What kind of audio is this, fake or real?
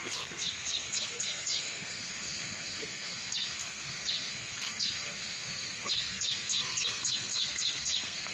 fake